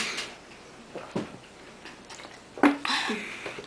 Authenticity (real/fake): real